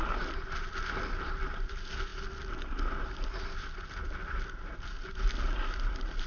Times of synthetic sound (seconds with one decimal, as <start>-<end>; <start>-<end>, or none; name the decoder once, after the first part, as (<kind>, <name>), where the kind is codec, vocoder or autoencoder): none